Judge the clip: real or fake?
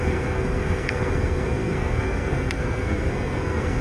fake